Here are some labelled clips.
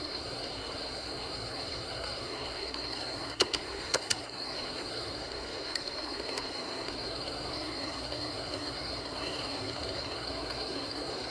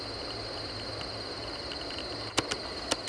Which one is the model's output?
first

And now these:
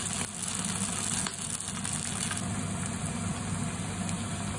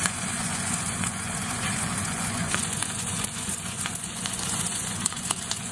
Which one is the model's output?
second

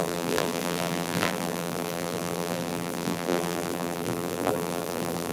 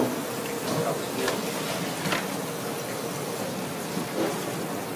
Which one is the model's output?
first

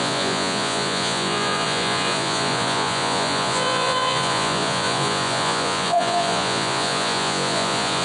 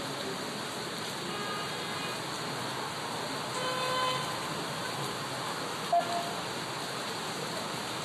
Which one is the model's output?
first